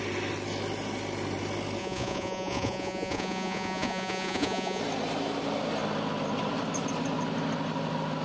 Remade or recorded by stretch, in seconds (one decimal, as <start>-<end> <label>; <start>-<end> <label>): 0.0-1.8 recorded; 1.8-4.8 remade; 4.8-8.2 recorded